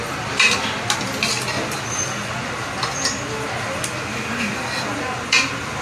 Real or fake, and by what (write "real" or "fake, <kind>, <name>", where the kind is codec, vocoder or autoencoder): real